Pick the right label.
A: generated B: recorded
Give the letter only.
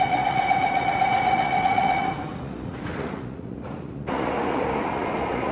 A